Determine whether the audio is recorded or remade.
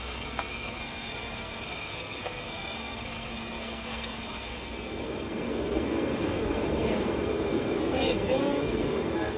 remade